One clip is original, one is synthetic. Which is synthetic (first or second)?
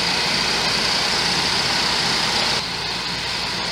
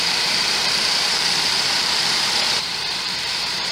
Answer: second